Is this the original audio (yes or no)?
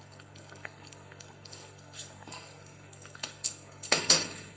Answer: no